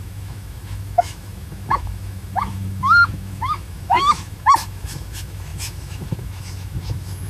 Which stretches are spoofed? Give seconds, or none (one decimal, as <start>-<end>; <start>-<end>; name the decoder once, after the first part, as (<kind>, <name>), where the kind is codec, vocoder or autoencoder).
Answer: 0.0-7.3 (autoencoder, DAC-VAE)